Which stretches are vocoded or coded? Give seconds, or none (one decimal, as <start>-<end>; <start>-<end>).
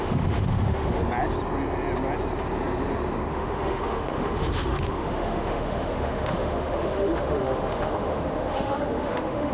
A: 0.0-1.0; 3.3-9.5